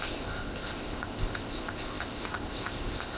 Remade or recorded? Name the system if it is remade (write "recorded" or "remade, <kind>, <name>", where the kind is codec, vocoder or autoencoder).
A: remade, codec, ZipCodec